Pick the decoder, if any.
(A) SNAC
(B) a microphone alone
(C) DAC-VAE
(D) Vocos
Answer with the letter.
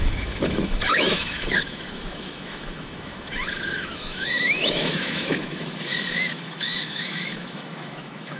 C